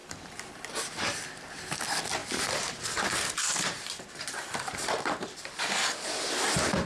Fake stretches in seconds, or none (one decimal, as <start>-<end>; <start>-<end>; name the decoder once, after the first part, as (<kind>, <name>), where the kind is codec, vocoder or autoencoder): 0.0-0.5 (vocoder, BigVGAN v2); 2.2-6.3